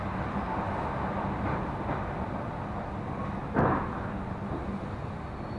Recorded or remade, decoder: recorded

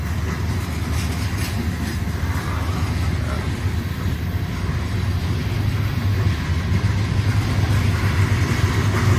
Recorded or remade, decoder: recorded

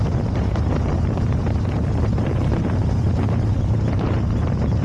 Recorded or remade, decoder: remade, vocoder, BigVGAN v2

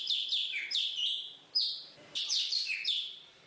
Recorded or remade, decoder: remade, vocoder, BigVGAN v2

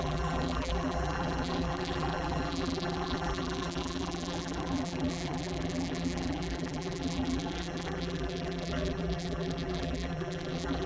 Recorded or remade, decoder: remade, vocoder, BigVGAN v2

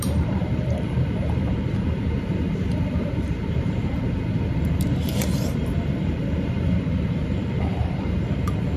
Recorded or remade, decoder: remade, vocoder, BigVGAN v2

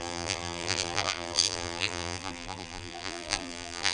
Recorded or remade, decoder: remade, vocoder, BigVGAN v2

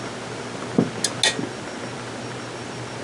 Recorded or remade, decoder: recorded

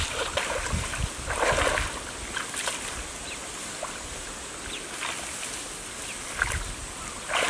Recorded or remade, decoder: recorded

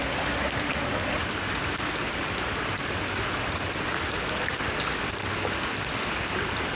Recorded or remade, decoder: recorded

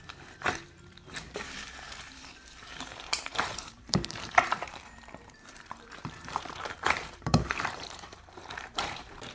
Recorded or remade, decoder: remade, vocoder, BigVGAN v2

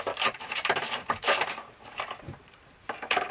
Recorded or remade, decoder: remade, vocoder, BigVGAN v2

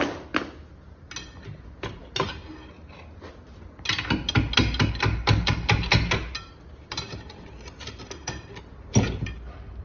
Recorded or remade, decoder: recorded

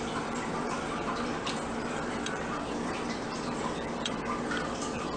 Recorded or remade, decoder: remade, vocoder, BigVGAN v2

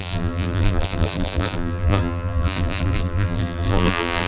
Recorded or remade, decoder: remade, vocoder, BigVGAN v2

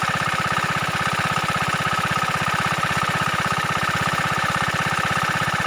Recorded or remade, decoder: remade, vocoder, BigVGAN v2